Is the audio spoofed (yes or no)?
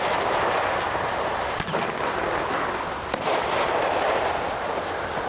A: no